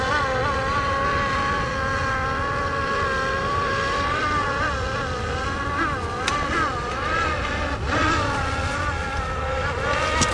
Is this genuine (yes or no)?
yes